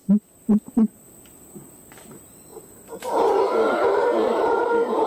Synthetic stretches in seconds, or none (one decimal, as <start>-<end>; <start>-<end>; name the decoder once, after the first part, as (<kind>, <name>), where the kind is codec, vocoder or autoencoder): 2.0-2.5 (vocoder, BigVGAN v2); 3.9-5.1